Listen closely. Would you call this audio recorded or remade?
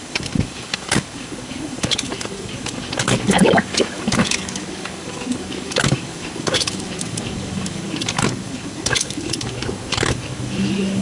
remade